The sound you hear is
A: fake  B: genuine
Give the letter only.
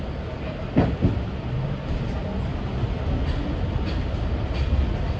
B